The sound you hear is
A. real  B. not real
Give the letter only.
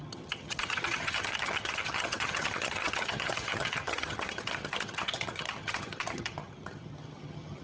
B